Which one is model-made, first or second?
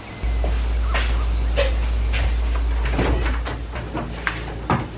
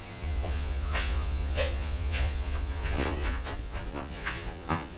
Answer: second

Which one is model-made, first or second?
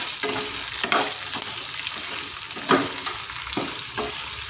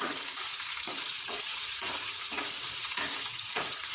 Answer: second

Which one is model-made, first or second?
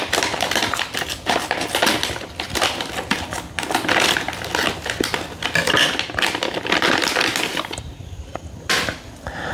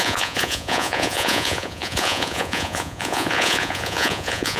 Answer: second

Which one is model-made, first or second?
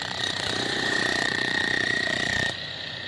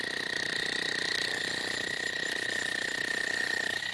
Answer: first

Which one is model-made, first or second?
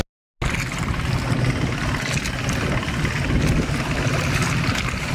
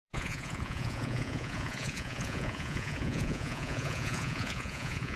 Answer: second